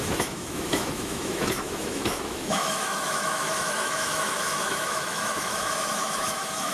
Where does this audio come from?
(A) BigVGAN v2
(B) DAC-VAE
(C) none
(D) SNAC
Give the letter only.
B